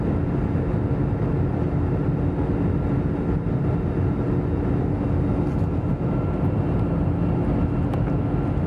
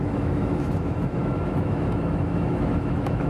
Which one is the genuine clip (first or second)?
first